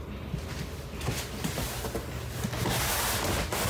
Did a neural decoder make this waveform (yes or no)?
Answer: no